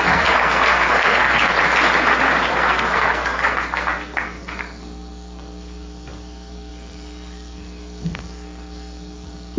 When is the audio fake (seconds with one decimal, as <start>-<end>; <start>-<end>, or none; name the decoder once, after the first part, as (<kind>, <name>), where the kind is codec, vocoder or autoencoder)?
0.0-1.5 (codec, SNAC); 2.5-9.6